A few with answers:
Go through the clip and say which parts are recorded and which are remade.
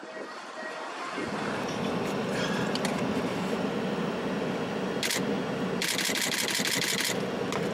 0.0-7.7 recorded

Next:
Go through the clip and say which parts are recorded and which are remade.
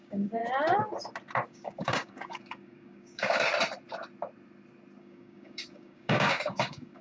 0.0-0.4 remade; 0.4-1.5 recorded; 1.5-3.5 remade; 3.5-5.0 recorded; 5.0-7.0 remade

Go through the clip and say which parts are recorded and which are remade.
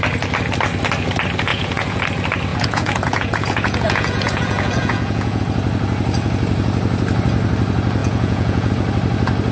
0.0-1.5 recorded; 1.5-2.0 remade; 2.0-2.5 recorded; 2.5-5.4 remade; 5.4-8.0 recorded; 8.0-8.7 remade; 8.7-9.5 recorded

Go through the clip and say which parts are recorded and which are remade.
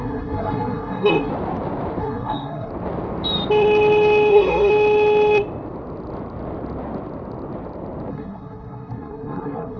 0.0-1.3 remade; 1.3-2.0 recorded; 2.0-2.7 remade; 2.7-4.3 recorded; 4.3-4.7 remade; 4.7-8.1 recorded; 8.1-9.8 remade